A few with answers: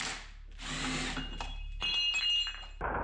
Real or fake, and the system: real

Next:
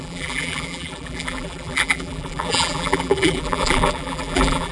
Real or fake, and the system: fake, vocoder, BigVGAN v2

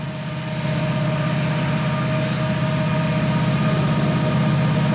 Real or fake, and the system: real